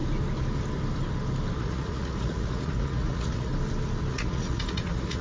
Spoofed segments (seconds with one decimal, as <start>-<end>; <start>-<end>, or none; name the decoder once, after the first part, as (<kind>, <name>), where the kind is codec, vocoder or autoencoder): 1.6-3.5 (vocoder, Vocos); 4.1-5.2